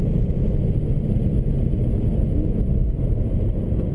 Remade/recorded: recorded